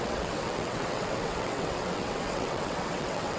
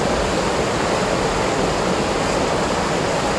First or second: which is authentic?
second